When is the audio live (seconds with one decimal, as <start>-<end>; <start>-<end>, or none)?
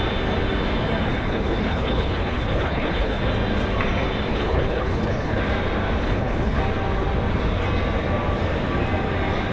0.0-1.1; 3.3-4.3; 5.4-6.0; 6.6-9.5